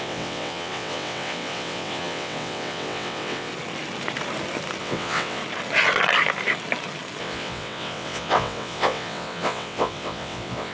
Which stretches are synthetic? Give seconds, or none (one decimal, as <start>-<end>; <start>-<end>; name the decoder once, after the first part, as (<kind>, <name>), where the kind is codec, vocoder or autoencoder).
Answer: 0.0-3.5 (vocoder, WaveNeXt); 4.8-5.4; 7.2-10.7